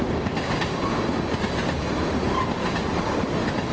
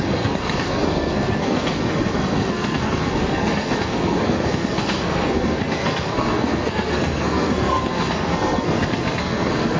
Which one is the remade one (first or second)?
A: second